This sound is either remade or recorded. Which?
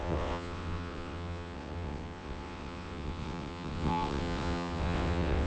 remade